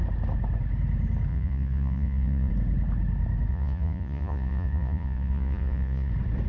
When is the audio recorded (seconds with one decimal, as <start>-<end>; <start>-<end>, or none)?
0.0-1.3; 2.5-3.5; 6.1-6.5